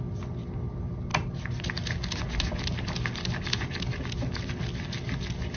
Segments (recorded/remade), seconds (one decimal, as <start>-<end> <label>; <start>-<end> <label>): 0.0-5.6 recorded